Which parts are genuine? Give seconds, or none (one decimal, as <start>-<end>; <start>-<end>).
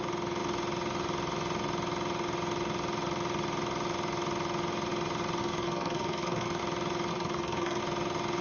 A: 0.0-5.4; 6.6-7.1; 7.8-8.4